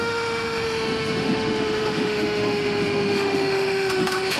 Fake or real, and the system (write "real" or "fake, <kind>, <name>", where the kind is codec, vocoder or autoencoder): fake, autoencoder, DAC-VAE